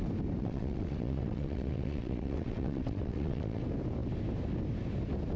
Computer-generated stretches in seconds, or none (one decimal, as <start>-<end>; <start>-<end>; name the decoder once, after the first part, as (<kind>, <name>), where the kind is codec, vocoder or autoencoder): 0.4-3.6 (vocoder, WaveNeXt)